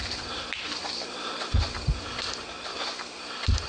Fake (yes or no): no